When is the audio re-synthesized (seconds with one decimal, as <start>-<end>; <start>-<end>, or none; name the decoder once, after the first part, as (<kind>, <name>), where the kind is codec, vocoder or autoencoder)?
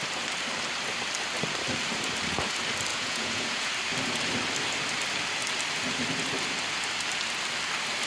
2.9-3.7 (vocoder, Vocos)